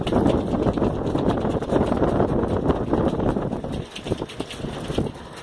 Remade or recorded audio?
recorded